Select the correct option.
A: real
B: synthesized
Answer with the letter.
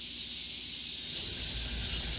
A